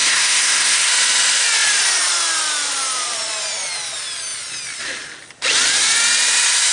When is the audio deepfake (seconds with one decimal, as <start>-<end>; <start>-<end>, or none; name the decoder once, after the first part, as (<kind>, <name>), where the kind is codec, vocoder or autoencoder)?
0.0-0.9 (codec, SNAC)